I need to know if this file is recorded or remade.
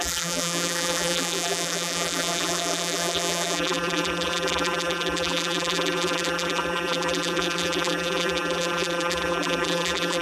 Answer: remade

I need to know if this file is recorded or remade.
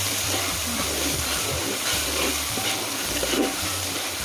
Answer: remade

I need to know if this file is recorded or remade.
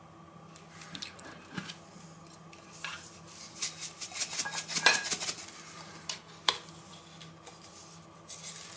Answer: recorded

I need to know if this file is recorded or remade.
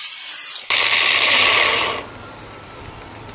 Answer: remade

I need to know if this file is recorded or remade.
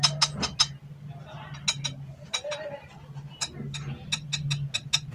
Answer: recorded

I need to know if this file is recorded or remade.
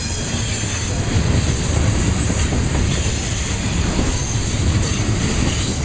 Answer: remade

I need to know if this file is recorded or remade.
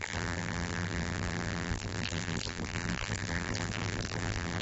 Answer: remade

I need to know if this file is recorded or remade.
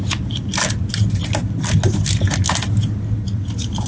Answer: recorded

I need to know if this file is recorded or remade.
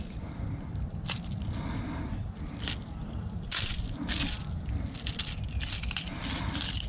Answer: recorded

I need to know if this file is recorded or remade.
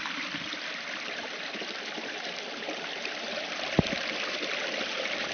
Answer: remade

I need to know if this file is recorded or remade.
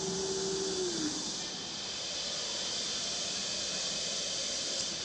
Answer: recorded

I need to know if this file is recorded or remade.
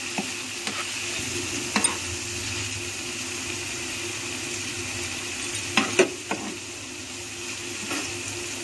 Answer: recorded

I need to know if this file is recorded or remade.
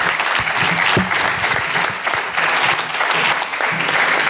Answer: recorded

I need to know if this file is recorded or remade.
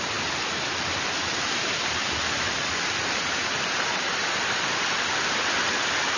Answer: remade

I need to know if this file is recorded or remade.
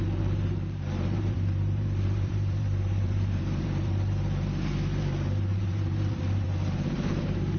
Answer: remade